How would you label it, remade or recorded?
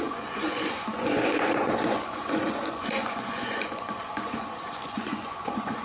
remade